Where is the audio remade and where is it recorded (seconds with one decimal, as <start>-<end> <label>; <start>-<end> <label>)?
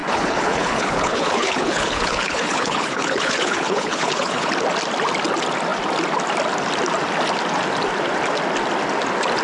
0.0-4.5 remade; 4.5-9.4 recorded